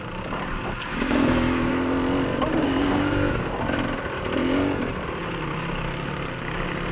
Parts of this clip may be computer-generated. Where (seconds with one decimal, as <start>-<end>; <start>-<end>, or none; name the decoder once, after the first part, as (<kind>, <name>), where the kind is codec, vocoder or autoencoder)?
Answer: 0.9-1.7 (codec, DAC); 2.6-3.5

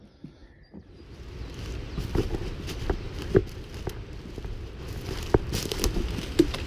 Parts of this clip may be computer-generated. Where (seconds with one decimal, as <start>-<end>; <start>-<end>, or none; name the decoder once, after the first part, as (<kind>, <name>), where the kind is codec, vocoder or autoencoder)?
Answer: none

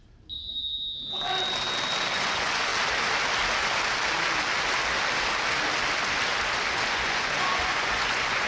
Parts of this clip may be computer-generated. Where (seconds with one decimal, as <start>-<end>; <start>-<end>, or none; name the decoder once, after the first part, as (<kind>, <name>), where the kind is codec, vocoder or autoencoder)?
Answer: 2.2-2.7 (vocoder, Vocos); 6.9-8.5

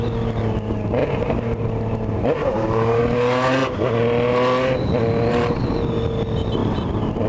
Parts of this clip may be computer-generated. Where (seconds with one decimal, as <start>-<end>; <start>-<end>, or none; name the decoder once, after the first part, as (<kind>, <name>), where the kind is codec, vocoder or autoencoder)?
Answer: 1.0-3.0 (vocoder, BigVGAN v2)

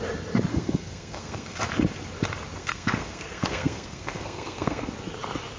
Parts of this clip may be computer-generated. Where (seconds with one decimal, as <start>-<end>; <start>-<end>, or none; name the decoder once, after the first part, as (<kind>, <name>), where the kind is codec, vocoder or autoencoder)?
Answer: 0.5-1.6 (codec, SNAC); 2.6-4.9